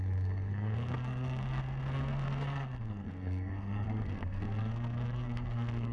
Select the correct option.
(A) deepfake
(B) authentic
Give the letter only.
A